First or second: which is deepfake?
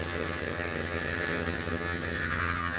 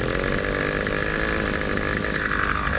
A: first